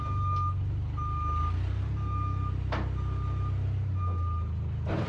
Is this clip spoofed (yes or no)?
no